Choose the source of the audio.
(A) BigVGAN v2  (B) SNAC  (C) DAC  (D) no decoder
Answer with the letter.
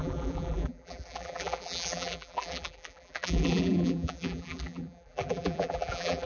A